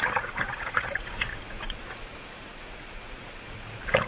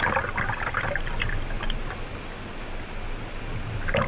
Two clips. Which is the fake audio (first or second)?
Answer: first